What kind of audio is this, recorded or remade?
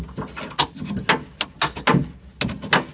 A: recorded